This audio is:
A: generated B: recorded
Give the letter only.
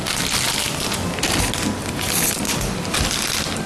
B